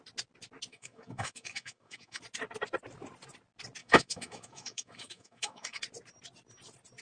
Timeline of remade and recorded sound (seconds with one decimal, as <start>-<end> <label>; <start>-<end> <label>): 0.0-0.7 recorded; 0.7-2.2 remade; 2.2-3.8 recorded; 3.8-5.8 remade; 5.8-7.0 recorded